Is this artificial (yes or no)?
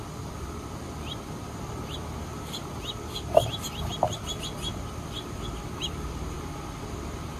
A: yes